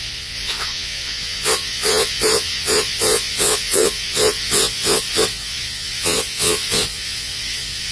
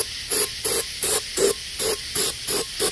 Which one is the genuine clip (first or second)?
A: second